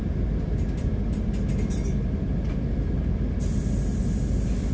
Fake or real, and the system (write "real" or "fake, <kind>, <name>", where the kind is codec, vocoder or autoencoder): real